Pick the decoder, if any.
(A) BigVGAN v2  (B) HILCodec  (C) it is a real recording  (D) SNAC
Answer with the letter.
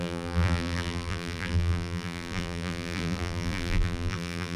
A